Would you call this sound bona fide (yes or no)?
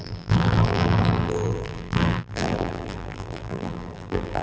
no